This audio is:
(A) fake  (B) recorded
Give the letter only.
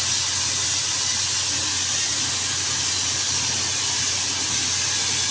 B